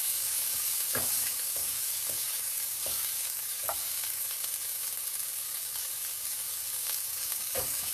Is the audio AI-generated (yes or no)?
yes